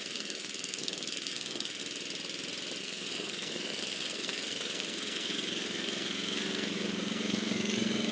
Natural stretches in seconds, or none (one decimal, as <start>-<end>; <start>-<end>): 1.8-2.8